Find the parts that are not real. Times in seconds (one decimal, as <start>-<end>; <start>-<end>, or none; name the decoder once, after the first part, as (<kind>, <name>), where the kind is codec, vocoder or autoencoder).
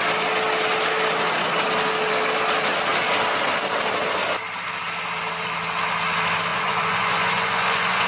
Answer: 6.5-8.1 (vocoder, Vocos)